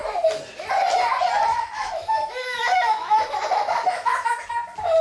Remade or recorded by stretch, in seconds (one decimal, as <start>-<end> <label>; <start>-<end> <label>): 0.0-1.5 recorded; 1.5-4.5 remade; 4.5-5.0 recorded